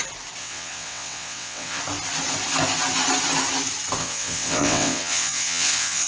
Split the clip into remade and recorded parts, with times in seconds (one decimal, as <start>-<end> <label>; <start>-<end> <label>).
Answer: 0.0-0.4 recorded; 0.4-1.8 remade; 1.8-4.0 recorded; 4.0-6.1 remade